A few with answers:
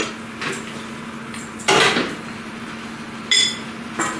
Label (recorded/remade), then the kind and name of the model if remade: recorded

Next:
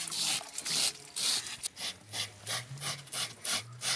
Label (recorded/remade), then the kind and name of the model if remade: recorded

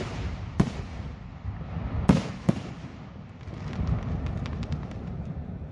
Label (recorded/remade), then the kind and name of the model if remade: recorded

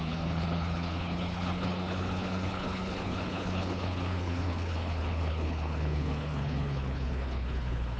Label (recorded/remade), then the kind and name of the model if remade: remade, codec, HILCodec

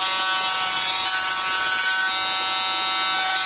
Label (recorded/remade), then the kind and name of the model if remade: recorded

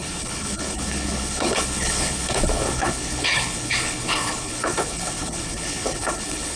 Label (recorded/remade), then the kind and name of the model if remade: remade, codec, HILCodec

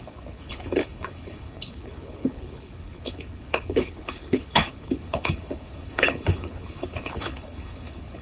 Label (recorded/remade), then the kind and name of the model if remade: remade, codec, HILCodec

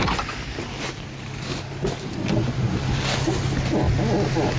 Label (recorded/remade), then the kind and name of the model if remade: recorded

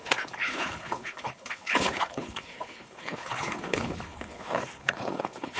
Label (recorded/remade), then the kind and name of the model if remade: remade, codec, HILCodec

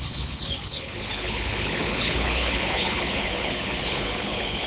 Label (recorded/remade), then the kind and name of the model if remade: remade, codec, HILCodec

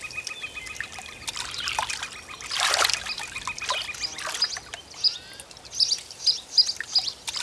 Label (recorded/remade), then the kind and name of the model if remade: recorded